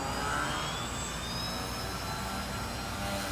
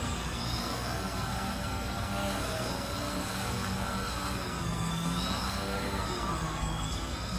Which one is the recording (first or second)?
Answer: first